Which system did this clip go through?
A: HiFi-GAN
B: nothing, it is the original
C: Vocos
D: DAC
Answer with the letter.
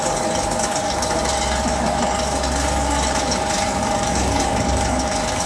D